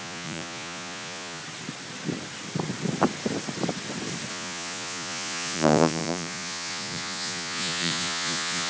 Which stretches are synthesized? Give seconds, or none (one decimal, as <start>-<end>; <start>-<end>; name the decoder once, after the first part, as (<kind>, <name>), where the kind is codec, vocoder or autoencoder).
0.0-1.4 (vocoder, Vocos); 4.3-8.7

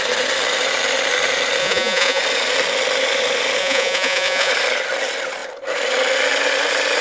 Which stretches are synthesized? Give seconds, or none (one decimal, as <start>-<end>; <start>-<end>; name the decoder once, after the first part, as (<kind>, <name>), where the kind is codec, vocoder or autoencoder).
1.6-2.2 (vocoder, Vocos); 3.6-4.5

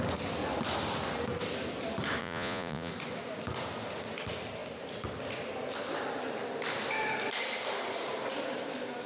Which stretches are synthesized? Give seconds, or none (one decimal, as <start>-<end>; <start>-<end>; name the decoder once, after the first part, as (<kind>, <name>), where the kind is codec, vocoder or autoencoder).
2.2-2.9 (vocoder, Vocos)